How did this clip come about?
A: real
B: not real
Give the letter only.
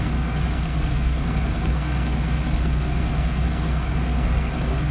B